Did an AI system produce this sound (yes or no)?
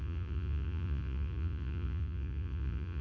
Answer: yes